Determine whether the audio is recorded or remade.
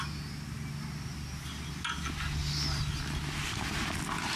recorded